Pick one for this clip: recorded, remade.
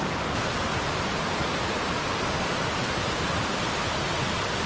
recorded